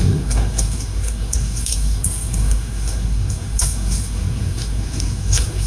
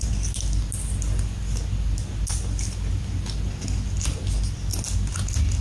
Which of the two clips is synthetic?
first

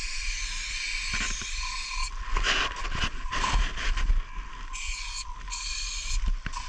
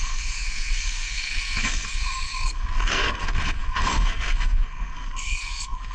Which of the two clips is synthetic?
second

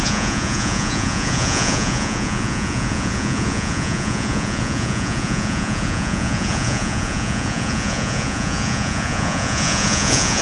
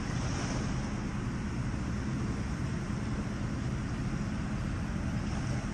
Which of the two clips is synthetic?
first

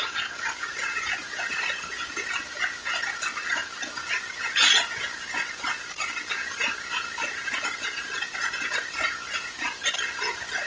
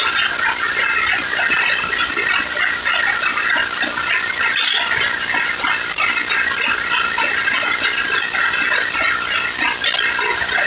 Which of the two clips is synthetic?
first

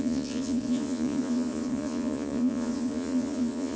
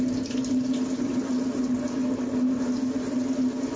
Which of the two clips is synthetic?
first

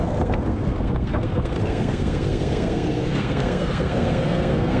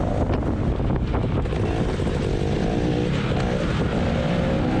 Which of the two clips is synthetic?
first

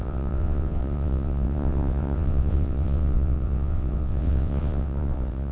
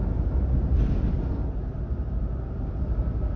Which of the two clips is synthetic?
first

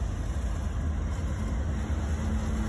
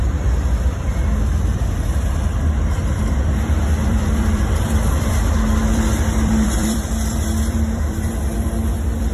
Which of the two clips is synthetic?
second